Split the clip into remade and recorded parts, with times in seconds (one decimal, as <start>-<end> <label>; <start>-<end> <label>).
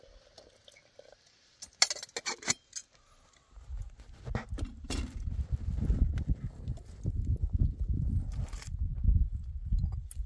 0.0-10.3 recorded